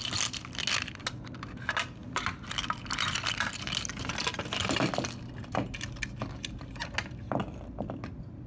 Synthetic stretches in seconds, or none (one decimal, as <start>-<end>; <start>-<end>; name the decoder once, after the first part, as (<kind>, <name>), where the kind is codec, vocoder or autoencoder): none